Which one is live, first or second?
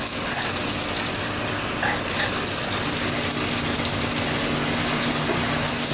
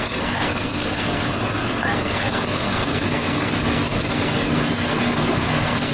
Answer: first